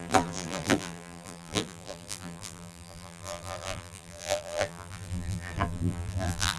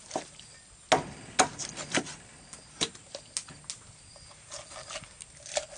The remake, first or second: first